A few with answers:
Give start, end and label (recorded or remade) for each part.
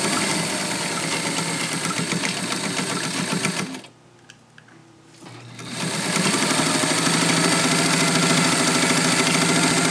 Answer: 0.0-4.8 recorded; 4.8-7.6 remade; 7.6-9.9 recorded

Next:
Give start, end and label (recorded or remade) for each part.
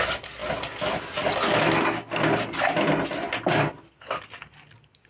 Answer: 0.0-5.1 recorded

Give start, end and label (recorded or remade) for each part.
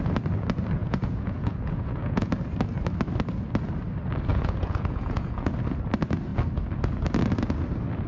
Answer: 0.0-0.8 recorded; 0.8-2.3 remade; 2.3-4.3 recorded; 4.3-5.5 remade; 5.5-8.1 recorded